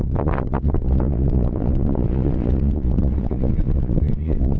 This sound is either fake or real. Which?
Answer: fake